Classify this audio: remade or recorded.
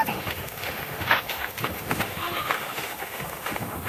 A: remade